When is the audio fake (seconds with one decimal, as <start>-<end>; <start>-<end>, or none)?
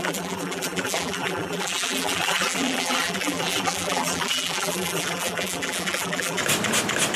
0.0-6.4